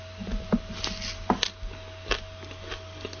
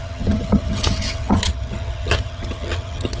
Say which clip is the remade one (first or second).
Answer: second